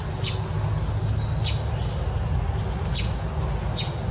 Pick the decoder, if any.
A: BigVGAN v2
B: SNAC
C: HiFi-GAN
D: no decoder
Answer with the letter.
D